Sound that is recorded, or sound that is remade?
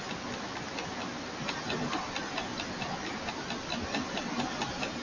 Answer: recorded